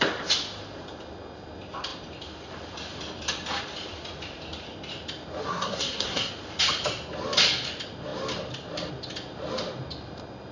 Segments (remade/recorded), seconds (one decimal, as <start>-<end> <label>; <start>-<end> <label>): 0.0-5.4 recorded; 5.4-6.3 remade; 6.3-10.5 recorded